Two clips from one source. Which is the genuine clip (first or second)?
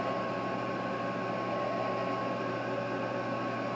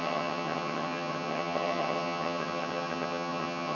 first